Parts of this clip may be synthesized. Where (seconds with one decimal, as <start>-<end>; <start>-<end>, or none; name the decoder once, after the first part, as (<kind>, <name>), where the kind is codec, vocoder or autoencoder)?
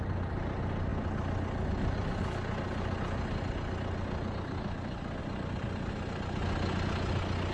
none